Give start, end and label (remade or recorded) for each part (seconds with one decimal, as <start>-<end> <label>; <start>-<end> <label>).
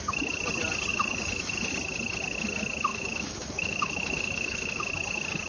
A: 0.0-0.9 recorded; 0.9-1.7 remade; 1.7-2.9 recorded; 2.9-4.8 remade; 4.8-5.5 recorded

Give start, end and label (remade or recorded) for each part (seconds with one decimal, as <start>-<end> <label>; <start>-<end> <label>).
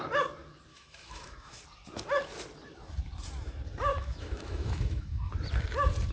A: 0.0-0.7 recorded; 0.7-1.6 remade; 1.6-3.9 recorded; 3.9-5.3 remade; 5.3-6.1 recorded